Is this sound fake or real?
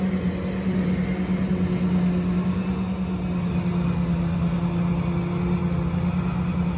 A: real